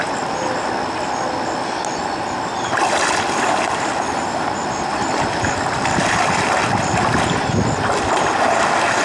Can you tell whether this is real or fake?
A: real